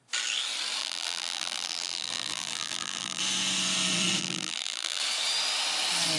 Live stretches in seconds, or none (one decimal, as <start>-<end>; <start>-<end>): 0.0-0.8; 3.2-4.2; 5.0-6.2